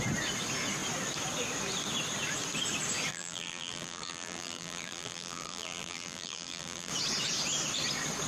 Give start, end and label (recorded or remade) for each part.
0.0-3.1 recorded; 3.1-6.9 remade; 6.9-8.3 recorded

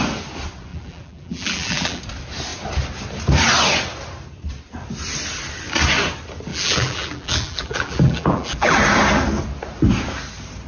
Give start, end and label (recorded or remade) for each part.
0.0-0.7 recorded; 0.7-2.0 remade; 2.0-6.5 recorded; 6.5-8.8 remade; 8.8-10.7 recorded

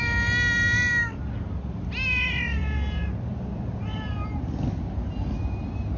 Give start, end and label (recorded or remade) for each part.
0.0-6.0 recorded

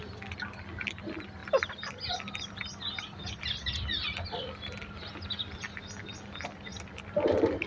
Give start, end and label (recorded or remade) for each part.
0.0-7.7 recorded

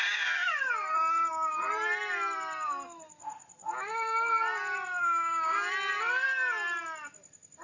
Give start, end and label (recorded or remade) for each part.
0.0-5.0 recorded; 5.0-5.7 remade; 5.7-7.6 recorded

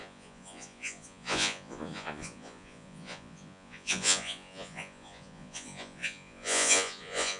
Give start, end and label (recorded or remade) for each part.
0.0-7.4 remade

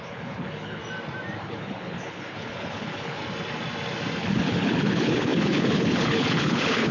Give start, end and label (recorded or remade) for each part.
0.0-0.8 remade; 0.8-1.4 recorded; 1.4-3.2 remade; 3.2-4.2 recorded; 4.2-6.9 remade

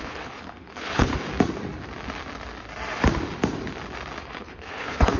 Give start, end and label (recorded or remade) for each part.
0.0-1.1 remade; 1.1-4.2 recorded; 4.2-5.2 remade